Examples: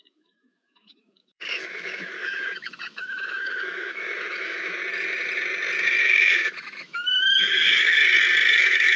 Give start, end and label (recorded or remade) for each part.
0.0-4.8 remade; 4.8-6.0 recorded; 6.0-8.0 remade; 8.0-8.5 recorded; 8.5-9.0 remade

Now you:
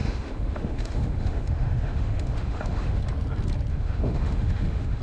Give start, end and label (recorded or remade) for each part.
0.0-3.0 remade; 3.0-3.7 recorded; 3.7-5.0 remade

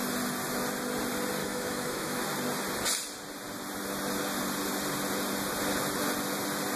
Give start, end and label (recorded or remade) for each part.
0.0-1.4 recorded; 1.4-2.2 remade; 2.2-6.8 recorded

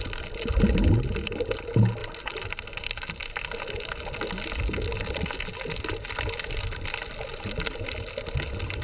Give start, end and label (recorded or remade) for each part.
0.0-8.8 recorded

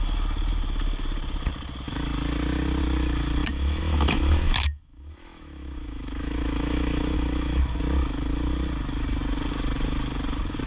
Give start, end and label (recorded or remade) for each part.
0.0-3.4 recorded; 3.4-7.6 remade; 7.6-10.7 recorded

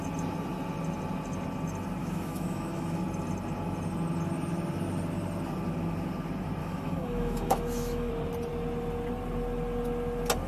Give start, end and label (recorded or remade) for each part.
0.0-2.0 recorded; 2.0-3.0 remade; 3.0-6.6 recorded; 6.6-8.1 remade; 8.1-10.5 recorded